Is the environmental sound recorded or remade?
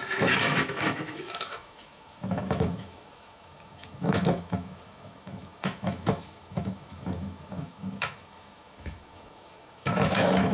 remade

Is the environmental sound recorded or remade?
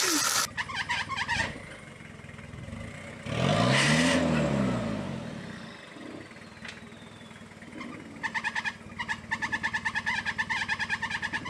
recorded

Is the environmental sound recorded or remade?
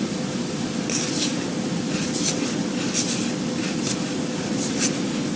recorded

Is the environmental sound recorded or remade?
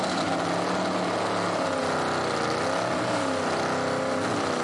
recorded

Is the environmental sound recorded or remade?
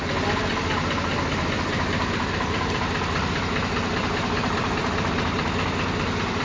remade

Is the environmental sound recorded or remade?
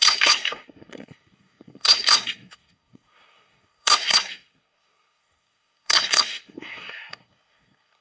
remade